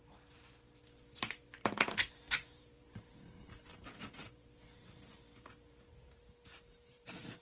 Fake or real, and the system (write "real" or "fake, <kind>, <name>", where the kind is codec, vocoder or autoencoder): fake, vocoder, BigVGAN v2